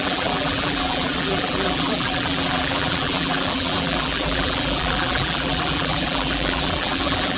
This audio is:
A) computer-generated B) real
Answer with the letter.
A